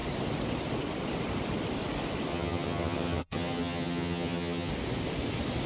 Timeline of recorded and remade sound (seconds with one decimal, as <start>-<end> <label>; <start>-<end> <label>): 0.0-2.3 recorded; 2.3-4.7 remade; 4.7-5.7 recorded